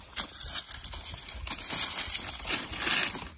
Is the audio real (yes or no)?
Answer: yes